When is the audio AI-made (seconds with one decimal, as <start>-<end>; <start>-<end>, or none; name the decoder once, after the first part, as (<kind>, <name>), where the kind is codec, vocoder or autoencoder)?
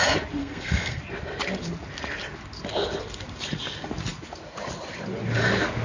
0.4-1.0 (codec, SNAC)